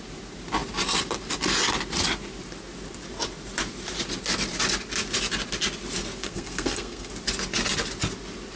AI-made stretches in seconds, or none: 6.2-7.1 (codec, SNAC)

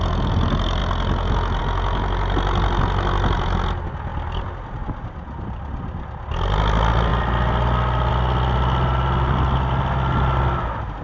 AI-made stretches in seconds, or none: none